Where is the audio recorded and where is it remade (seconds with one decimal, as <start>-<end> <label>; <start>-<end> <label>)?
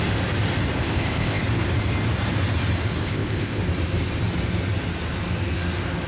0.0-0.8 recorded; 0.8-1.4 remade; 1.4-3.0 recorded; 3.0-3.6 remade; 3.6-6.1 recorded